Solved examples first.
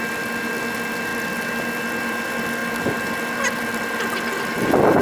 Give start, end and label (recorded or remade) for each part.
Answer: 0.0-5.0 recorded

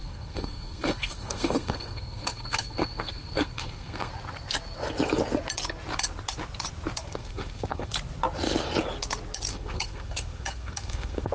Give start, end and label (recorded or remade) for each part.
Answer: 0.0-4.1 remade; 4.1-7.0 recorded; 7.0-7.9 remade; 7.9-9.5 recorded; 9.5-11.3 remade

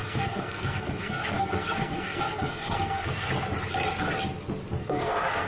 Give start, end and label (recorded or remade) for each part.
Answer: 0.0-3.3 remade; 3.3-4.8 recorded; 4.8-5.5 remade

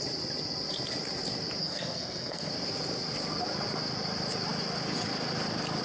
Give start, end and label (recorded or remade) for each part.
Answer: 0.0-1.6 recorded; 1.6-2.5 remade; 2.5-5.8 recorded

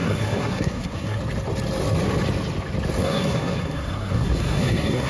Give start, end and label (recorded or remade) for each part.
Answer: 0.0-1.2 remade; 1.2-3.0 recorded; 3.0-5.1 remade

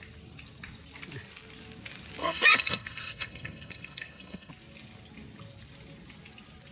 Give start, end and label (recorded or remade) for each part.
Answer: 0.0-2.2 recorded; 2.2-4.5 remade; 4.5-6.7 recorded

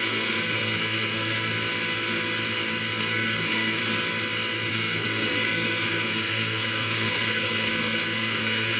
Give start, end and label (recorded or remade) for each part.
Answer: 0.0-1.5 remade; 1.5-3.0 recorded; 3.0-3.8 remade; 3.8-4.7 recorded; 4.7-8.8 remade